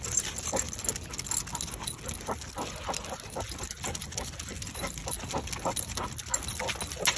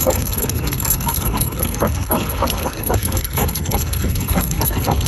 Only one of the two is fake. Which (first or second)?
second